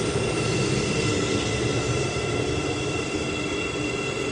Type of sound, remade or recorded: recorded